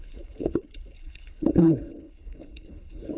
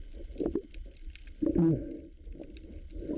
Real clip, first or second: second